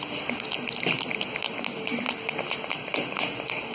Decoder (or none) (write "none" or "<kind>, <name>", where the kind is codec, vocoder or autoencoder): none